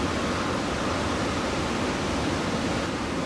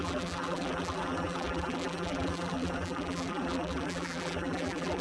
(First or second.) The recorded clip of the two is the first